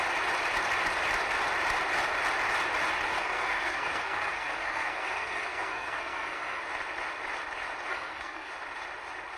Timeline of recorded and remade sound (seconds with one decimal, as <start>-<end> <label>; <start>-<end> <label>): 0.0-3.1 recorded; 3.1-6.6 remade; 6.6-7.9 recorded; 7.9-8.5 remade; 8.5-9.4 recorded